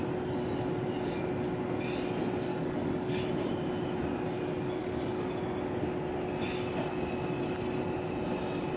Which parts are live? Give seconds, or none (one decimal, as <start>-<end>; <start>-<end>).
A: 0.0-2.5; 3.2-4.8; 5.4-8.8